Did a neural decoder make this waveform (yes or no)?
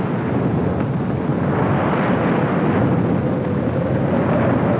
no